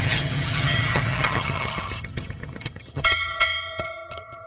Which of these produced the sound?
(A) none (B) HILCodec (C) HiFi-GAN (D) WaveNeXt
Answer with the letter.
C